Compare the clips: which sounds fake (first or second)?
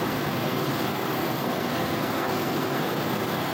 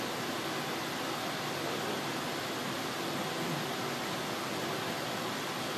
first